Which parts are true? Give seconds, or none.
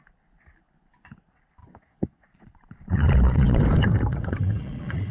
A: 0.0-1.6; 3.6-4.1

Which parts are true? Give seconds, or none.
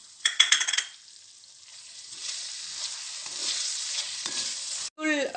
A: 0.8-1.7; 2.5-3.4; 4.9-5.4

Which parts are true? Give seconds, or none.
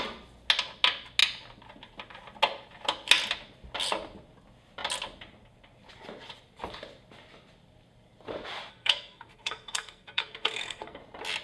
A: 0.0-8.7; 11.0-11.4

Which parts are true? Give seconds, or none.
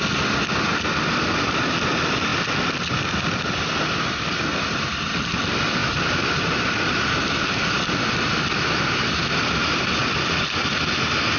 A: 0.0-0.7; 1.9-5.8; 6.9-10.0; 10.7-11.4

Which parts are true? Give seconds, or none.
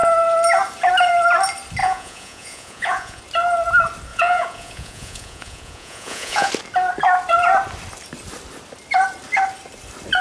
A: 0.0-1.8; 3.2-4.1; 6.5-10.2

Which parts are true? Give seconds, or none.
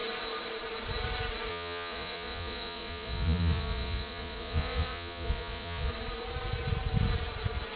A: 0.0-1.5; 5.9-7.8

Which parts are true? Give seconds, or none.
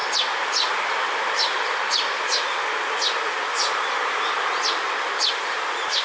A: 0.0-6.0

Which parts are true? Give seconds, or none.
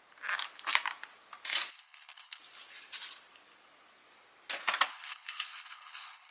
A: 0.0-1.7; 2.4-4.9